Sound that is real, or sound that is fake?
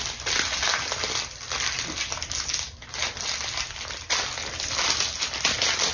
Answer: real